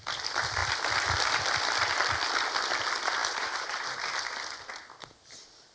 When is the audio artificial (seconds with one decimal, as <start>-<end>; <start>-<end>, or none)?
none